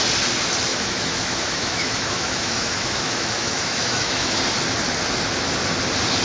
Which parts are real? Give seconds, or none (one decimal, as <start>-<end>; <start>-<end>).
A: 0.0-0.7; 4.4-6.2